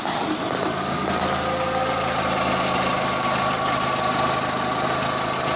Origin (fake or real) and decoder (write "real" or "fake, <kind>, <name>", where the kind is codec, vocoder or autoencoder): real